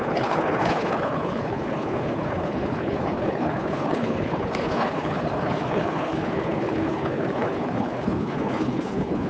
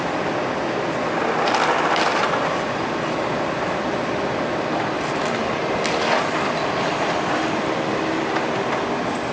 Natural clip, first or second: second